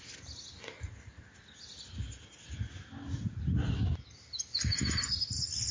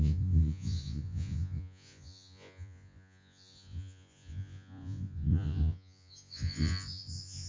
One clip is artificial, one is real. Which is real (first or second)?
first